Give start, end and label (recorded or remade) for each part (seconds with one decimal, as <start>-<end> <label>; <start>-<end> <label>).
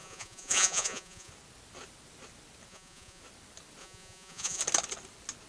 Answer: 0.0-1.3 remade; 1.3-2.7 recorded; 2.7-3.2 remade; 3.2-3.8 recorded; 3.8-4.6 remade; 4.6-5.5 recorded